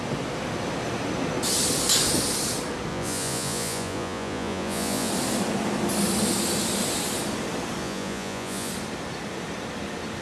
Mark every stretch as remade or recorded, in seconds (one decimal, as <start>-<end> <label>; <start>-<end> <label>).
0.0-2.9 recorded; 2.9-5.1 remade; 5.1-7.8 recorded; 7.8-8.7 remade; 8.7-10.2 recorded